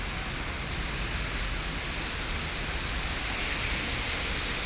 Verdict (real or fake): real